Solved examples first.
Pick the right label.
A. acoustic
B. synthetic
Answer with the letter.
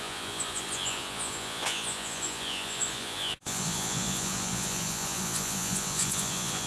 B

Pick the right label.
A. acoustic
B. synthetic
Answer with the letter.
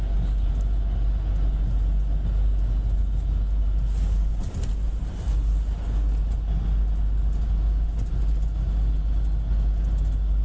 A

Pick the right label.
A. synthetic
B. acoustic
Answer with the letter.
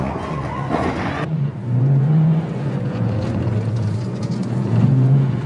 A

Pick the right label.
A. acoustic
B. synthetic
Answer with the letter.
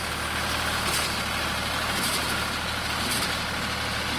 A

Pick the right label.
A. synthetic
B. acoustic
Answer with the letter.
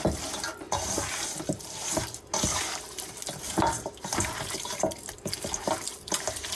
B